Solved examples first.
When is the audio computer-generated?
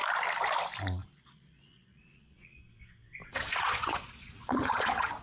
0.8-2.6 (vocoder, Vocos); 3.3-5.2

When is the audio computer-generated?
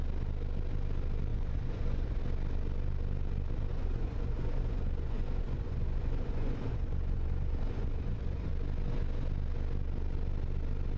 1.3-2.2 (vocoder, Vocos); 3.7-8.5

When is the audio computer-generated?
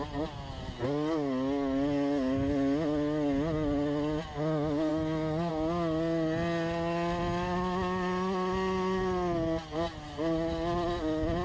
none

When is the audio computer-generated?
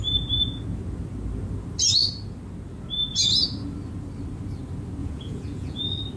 5.0-5.8 (vocoder, Vocos)